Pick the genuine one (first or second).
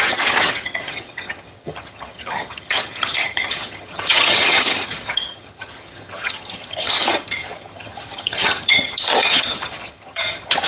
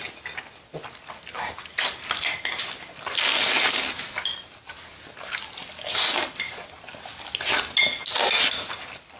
second